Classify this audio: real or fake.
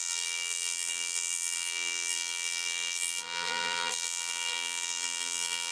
fake